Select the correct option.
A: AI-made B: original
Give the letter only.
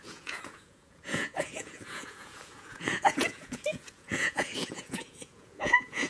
A